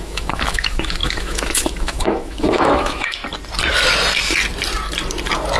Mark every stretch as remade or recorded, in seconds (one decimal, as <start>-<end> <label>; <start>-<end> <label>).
0.0-3.2 remade; 3.2-5.6 recorded